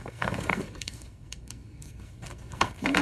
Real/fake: fake